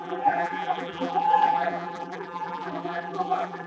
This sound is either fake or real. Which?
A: fake